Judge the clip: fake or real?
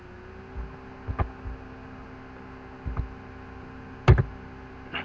real